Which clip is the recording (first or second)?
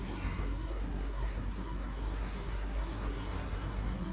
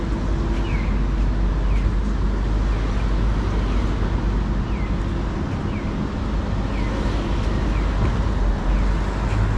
second